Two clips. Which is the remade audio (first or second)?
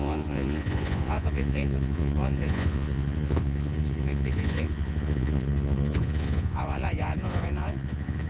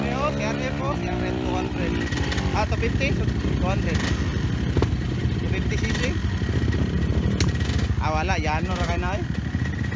first